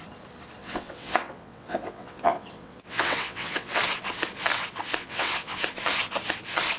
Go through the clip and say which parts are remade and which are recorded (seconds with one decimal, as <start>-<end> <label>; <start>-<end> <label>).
0.0-0.6 recorded; 0.6-3.8 remade; 3.8-5.0 recorded; 5.0-5.6 remade; 5.6-6.8 recorded